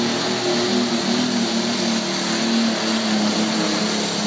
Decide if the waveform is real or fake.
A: real